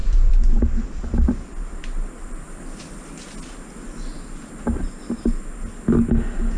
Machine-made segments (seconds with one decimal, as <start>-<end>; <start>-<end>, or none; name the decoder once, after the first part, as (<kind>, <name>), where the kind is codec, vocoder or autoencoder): 0.0-2.8 (vocoder, BigVGAN v2)